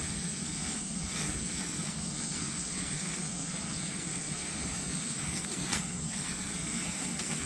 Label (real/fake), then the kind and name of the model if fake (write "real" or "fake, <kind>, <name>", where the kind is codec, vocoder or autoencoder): fake, codec, SNAC